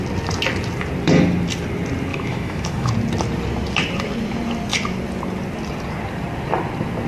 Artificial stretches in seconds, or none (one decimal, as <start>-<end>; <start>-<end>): 2.1-2.9